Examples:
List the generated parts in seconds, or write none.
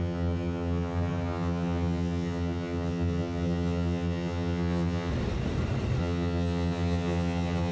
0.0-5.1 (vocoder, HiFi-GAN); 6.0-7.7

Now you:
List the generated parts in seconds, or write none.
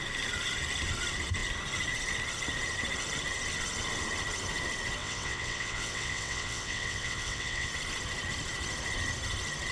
5.0-7.7 (vocoder, WaveNeXt)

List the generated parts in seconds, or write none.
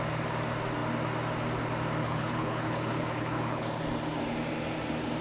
2.0-3.8 (codec, HILCodec)